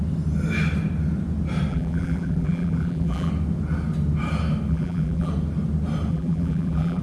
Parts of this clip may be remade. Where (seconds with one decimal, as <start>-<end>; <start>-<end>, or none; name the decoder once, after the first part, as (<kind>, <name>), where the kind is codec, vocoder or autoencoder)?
1.7-3.3 (vocoder, BigVGAN v2); 4.7-5.3; 6.1-7.0